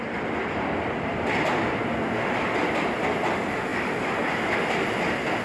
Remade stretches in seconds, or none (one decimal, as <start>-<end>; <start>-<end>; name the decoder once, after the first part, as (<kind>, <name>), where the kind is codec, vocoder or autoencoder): none